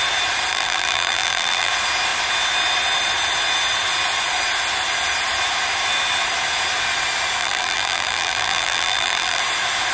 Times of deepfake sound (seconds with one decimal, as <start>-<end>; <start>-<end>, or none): 0.5-1.7; 7.4-9.4